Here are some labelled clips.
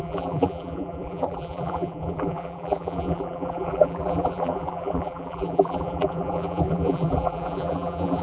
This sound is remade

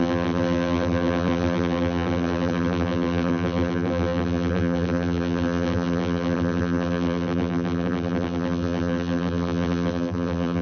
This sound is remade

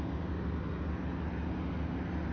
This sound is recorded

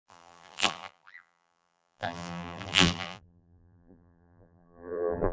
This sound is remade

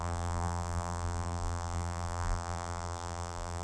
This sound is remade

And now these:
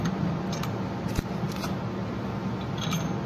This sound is recorded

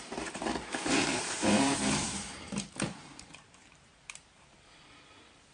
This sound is remade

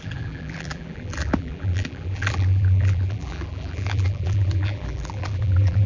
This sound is remade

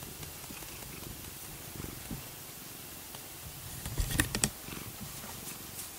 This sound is remade